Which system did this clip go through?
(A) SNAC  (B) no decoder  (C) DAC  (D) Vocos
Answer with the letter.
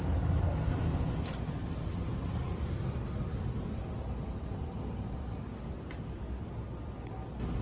B